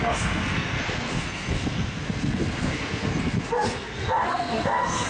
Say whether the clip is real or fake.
fake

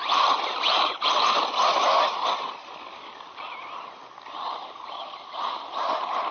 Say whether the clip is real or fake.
real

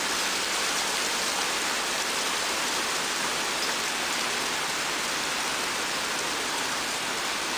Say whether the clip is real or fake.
real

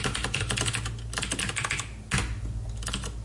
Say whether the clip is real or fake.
real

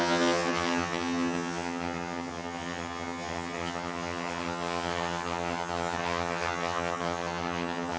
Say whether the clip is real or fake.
fake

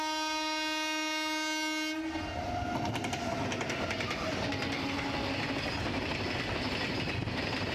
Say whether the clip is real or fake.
real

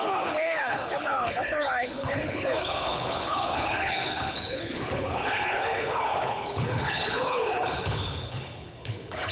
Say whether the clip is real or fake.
fake